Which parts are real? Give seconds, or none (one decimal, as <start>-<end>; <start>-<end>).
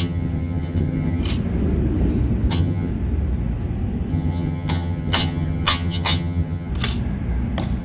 1.2-2.5; 2.9-4.1; 6.7-7.8